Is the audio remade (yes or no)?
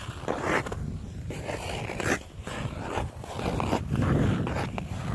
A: no